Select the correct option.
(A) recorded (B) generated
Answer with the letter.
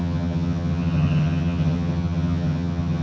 B